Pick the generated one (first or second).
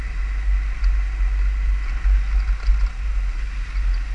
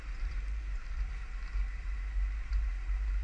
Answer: second